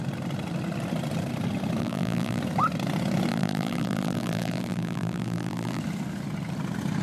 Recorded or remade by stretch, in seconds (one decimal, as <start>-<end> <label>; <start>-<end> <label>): 0.0-1.8 recorded; 1.8-2.4 remade; 2.4-3.3 recorded; 3.3-5.8 remade; 5.8-7.0 recorded